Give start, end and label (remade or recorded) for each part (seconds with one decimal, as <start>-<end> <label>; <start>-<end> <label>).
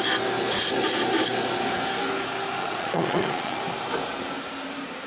0.0-2.6 recorded; 2.6-3.6 remade; 3.6-5.1 recorded